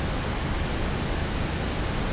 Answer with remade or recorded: recorded